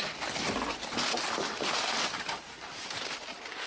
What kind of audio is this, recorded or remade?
recorded